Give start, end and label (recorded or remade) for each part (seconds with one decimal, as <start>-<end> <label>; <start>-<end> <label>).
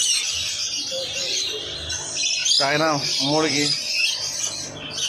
0.0-2.4 recorded; 2.4-4.1 remade; 4.1-5.1 recorded